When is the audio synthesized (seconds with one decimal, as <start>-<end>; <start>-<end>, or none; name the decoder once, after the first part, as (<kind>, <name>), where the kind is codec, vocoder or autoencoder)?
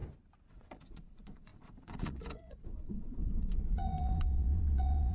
0.5-5.1 (vocoder, Vocos)